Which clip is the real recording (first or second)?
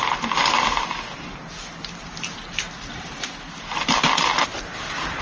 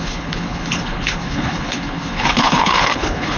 first